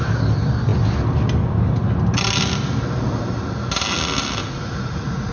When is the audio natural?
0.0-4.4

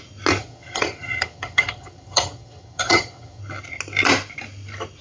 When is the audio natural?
0.0-0.4; 3.4-5.0

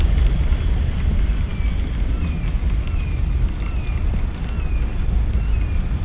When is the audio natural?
0.0-6.0